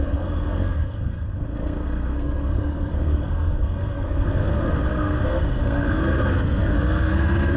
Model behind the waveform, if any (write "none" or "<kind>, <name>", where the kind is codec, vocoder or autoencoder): codec, SNAC